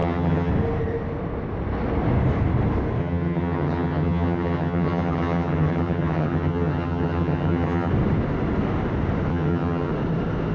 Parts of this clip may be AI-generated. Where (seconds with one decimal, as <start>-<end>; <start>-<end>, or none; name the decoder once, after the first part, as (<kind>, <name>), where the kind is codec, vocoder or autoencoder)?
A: 0.0-0.5 (vocoder, HiFi-GAN); 3.0-7.9; 9.3-9.9